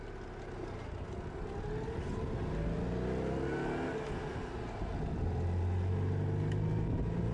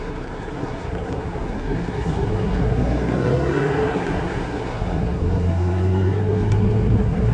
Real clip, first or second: first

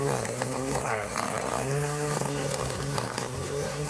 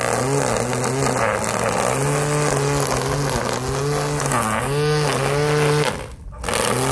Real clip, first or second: second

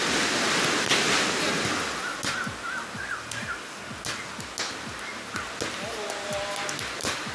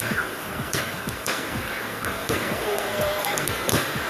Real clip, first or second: first